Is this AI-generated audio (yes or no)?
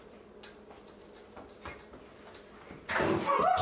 yes